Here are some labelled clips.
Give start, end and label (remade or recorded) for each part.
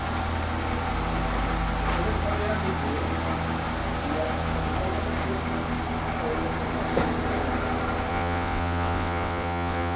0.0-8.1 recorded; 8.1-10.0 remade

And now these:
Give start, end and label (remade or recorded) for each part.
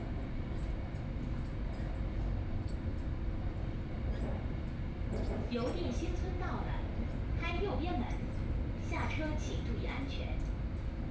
0.0-11.1 recorded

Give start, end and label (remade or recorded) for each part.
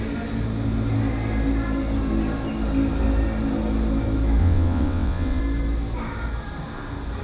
0.0-4.4 recorded; 4.4-5.4 remade; 5.4-7.2 recorded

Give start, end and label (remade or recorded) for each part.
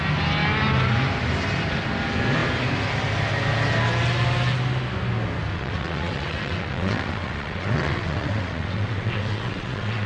0.0-5.5 recorded; 5.5-10.1 remade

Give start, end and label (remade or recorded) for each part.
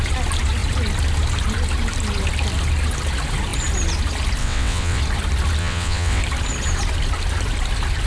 0.0-4.4 recorded; 4.4-5.0 remade; 5.0-5.6 recorded; 5.6-6.2 remade; 6.2-8.1 recorded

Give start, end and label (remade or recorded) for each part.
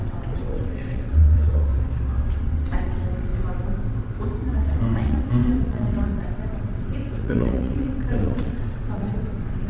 0.0-1.7 remade; 1.7-2.3 recorded; 2.3-3.3 remade; 3.3-4.5 recorded; 4.5-9.7 remade